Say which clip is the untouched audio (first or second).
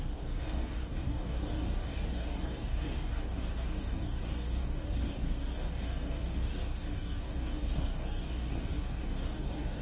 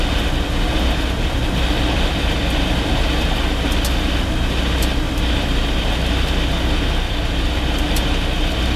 second